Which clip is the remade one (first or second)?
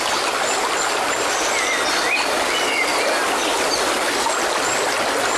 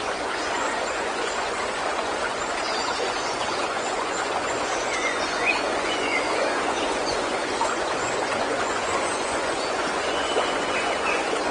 second